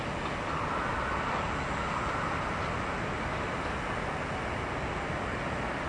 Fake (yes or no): no